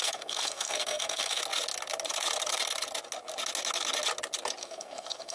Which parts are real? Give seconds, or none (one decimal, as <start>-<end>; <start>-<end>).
1.4-4.6